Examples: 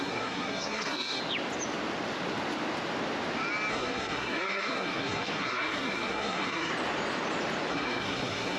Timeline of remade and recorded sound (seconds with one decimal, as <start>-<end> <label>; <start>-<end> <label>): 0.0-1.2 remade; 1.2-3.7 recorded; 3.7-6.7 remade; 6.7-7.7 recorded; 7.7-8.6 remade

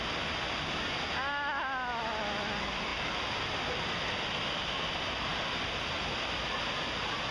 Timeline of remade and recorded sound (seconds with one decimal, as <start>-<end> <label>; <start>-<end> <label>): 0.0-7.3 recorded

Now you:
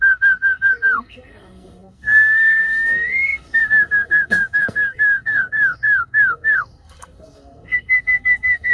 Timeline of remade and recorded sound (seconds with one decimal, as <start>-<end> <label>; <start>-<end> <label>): 0.0-8.7 remade

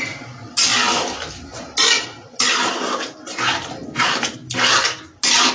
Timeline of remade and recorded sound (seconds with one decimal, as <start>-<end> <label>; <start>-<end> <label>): 0.0-5.5 recorded

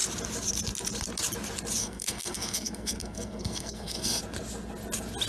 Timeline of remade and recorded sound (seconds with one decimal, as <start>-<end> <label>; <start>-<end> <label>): 0.0-1.8 recorded; 1.8-4.2 remade; 4.2-5.3 recorded